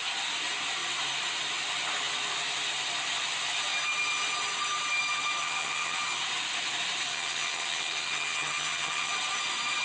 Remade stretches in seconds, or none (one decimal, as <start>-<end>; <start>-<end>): 5.4-6.0; 7.1-9.1